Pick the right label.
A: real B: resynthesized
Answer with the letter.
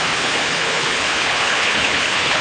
B